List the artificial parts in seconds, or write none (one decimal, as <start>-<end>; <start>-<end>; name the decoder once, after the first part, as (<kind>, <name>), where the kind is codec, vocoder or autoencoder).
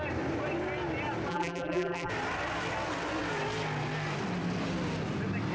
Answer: 1.3-2.1 (vocoder, BigVGAN v2)